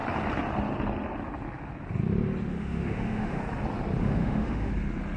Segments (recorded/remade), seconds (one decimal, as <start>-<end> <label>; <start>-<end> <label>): 0.0-2.5 recorded; 2.5-3.4 remade; 3.4-4.0 recorded; 4.0-4.7 remade; 4.7-5.2 recorded